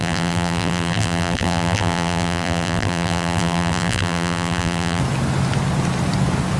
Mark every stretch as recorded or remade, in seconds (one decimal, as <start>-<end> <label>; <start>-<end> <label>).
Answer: 0.0-5.0 remade; 5.0-6.6 recorded